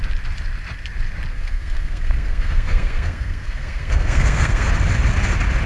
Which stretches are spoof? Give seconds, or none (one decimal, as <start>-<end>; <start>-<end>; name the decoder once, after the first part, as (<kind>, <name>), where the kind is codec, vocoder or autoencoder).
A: 1.3-4.7 (codec, SNAC)